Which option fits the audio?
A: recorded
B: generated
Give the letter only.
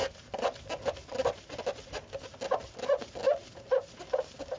A